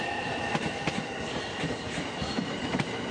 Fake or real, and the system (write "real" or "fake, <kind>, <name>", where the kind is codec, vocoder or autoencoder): fake, vocoder, BigVGAN v2